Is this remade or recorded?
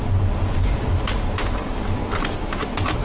recorded